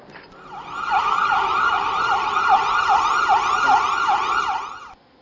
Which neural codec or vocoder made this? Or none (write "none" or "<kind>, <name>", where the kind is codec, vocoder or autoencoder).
none